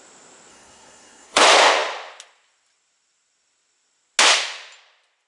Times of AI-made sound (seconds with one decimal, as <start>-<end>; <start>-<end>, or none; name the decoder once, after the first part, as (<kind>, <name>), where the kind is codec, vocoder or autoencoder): 0.5-1.4 (codec, SNAC)